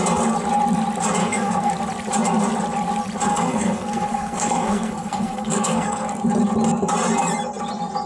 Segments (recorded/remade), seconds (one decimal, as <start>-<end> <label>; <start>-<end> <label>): 0.0-1.2 recorded; 1.2-1.7 remade; 1.7-3.3 recorded; 3.3-6.1 remade; 6.1-8.1 recorded